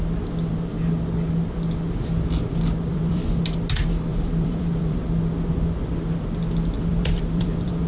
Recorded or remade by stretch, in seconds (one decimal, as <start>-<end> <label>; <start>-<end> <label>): 0.0-2.9 recorded; 2.9-3.4 remade; 3.4-4.1 recorded; 4.1-5.0 remade; 5.0-6.9 recorded; 6.9-7.9 remade